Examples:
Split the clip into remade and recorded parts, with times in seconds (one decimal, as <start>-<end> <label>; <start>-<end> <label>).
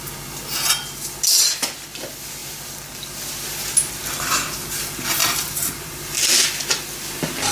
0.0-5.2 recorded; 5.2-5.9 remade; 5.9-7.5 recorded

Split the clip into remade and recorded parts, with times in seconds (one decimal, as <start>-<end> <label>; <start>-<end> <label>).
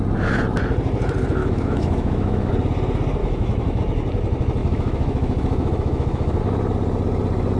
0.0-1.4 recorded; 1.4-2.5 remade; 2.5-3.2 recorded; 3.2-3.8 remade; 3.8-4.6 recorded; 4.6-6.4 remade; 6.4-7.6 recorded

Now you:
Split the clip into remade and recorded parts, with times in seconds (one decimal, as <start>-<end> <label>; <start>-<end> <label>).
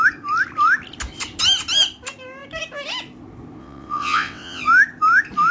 0.0-3.6 recorded; 3.6-4.6 remade; 4.6-5.5 recorded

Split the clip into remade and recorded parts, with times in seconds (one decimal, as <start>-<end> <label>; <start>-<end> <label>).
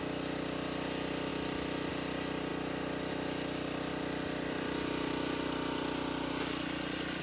0.0-1.3 recorded; 1.3-1.9 remade; 1.9-3.9 recorded; 3.9-7.2 remade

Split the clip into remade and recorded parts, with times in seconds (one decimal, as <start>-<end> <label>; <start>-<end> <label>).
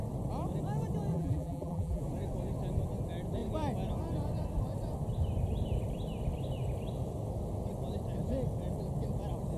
0.0-1.1 recorded; 1.1-2.0 remade; 2.0-9.6 recorded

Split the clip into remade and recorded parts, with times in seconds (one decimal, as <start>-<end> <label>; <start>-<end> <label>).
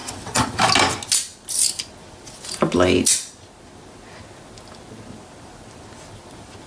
0.0-0.6 remade; 0.6-6.7 recorded